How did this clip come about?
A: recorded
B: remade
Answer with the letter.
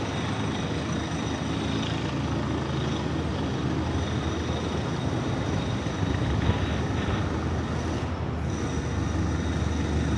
A